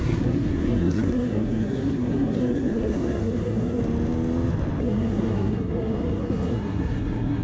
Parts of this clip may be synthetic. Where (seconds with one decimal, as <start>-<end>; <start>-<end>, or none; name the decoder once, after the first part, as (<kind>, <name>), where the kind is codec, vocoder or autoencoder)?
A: 0.0-3.8 (codec, SNAC); 4.8-7.4